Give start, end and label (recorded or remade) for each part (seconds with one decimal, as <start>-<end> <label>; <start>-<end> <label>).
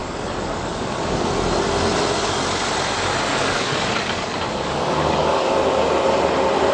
0.0-1.3 remade; 1.3-3.3 recorded; 3.3-5.5 remade; 5.5-6.7 recorded